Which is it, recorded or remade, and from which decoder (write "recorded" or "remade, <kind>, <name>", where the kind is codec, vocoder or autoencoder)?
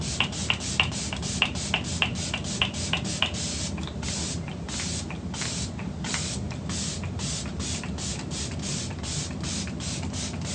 recorded